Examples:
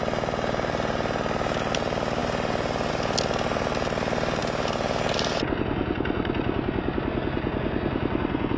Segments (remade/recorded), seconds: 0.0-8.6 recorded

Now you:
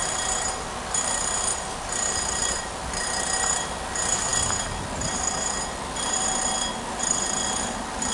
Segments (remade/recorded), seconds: 0.0-8.1 recorded

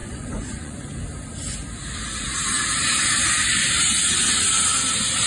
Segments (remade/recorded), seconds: 0.0-1.0 remade; 1.0-5.3 recorded